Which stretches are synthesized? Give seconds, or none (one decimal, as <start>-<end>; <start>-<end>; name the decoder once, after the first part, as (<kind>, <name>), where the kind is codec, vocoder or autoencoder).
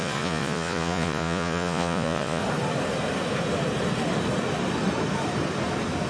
0.0-2.4 (vocoder, Vocos)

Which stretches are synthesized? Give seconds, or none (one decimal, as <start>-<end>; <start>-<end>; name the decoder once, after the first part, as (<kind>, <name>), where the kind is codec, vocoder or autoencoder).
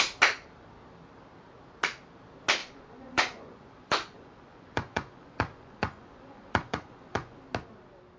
2.6-7.4 (vocoder, Vocos)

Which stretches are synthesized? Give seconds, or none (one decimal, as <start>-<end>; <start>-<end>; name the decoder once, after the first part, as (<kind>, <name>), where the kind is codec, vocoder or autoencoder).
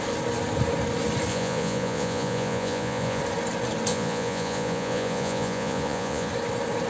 1.3-3.2 (vocoder, Vocos); 3.9-6.3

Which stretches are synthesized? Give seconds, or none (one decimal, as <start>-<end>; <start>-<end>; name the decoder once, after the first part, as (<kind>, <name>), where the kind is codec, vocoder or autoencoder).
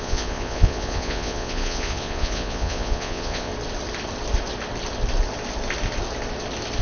0.0-3.5 (vocoder, Vocos)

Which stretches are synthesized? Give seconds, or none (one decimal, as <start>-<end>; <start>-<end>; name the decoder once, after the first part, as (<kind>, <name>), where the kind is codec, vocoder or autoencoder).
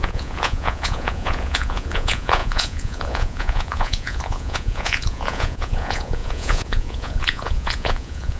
0.0-8.4 (vocoder, Vocos)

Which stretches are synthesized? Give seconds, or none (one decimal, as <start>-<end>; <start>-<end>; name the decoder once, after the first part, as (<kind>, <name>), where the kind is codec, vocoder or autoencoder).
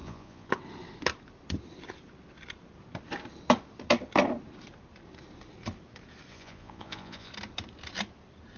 0.0-0.5 (vocoder, Vocos); 6.3-7.3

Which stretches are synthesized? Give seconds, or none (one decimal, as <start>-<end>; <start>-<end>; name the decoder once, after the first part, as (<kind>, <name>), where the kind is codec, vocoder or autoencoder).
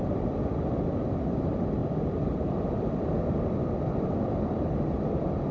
none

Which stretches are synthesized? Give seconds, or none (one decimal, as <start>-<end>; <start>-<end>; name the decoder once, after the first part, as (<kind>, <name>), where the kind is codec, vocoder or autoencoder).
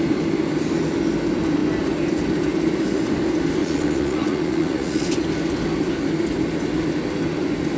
3.6-5.1 (vocoder, Vocos)